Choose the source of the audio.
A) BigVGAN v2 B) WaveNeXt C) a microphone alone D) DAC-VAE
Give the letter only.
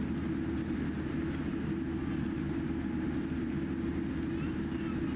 C